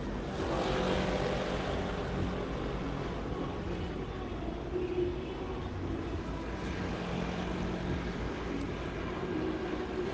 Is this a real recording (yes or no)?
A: yes